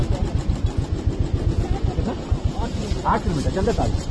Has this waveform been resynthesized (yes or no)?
no